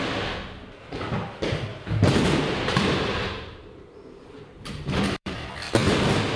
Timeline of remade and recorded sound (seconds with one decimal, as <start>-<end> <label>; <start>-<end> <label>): 0.0-1.7 recorded; 1.7-5.5 remade; 5.5-6.4 recorded